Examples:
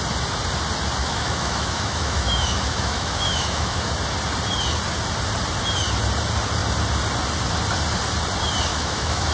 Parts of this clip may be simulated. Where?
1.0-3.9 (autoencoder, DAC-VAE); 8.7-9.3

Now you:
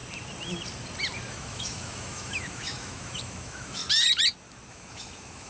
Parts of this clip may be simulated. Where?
1.3-3.8 (autoencoder, DAC-VAE); 4.7-5.5